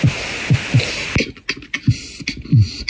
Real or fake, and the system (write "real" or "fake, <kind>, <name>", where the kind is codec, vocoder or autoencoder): real